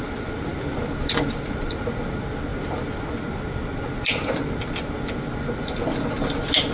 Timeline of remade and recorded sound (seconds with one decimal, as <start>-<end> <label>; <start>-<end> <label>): 0.0-6.7 recorded